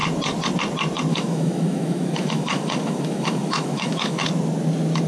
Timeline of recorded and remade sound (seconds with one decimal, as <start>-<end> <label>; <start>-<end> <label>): 0.0-1.1 recorded; 1.1-4.2 remade; 4.2-5.1 recorded